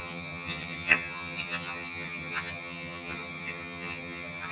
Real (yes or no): no